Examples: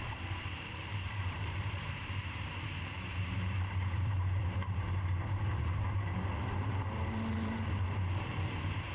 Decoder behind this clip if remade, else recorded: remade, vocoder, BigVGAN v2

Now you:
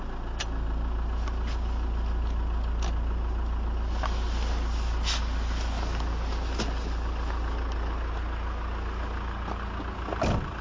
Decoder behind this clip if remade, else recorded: recorded